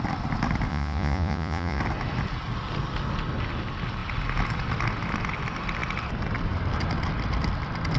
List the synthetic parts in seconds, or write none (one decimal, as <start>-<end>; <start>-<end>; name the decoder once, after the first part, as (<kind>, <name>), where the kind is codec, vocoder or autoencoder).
0.7-1.8 (vocoder, Vocos)